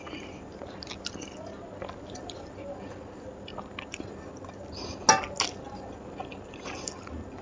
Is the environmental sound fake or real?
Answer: real